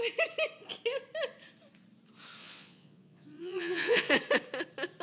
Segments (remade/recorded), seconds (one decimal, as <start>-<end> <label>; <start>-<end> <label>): 0.0-2.4 recorded; 2.4-4.1 remade; 4.1-5.0 recorded